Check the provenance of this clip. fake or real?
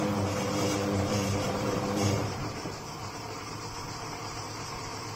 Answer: fake